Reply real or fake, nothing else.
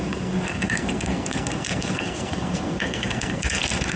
fake